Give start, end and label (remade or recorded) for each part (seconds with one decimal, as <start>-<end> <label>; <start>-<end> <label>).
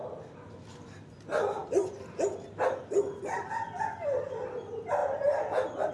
0.0-5.9 recorded